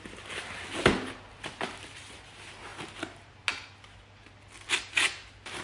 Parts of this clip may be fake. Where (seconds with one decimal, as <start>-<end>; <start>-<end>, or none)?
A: none